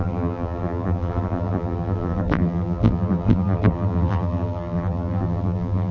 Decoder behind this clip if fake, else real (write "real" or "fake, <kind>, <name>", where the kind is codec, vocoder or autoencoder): fake, vocoder, BigVGAN v2